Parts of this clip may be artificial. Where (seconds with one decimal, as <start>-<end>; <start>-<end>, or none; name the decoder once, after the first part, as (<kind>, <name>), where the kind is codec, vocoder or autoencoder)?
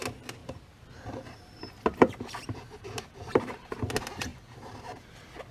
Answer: 0.4-3.7 (vocoder, BigVGAN v2); 4.3-5.1